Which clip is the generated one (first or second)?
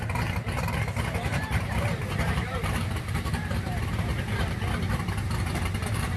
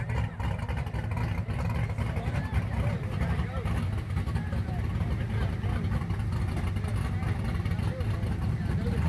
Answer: first